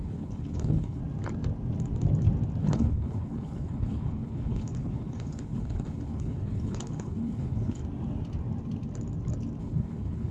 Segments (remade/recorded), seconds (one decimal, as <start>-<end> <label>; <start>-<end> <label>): 0.0-1.0 remade; 1.0-2.6 recorded; 2.6-7.8 remade; 7.8-9.6 recorded; 9.6-10.3 remade